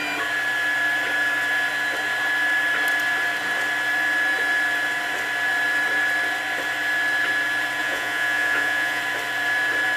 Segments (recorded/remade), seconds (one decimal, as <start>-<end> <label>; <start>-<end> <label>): 0.0-7.8 recorded; 7.8-9.0 remade; 9.0-10.0 recorded